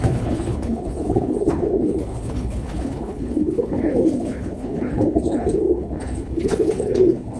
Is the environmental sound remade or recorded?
remade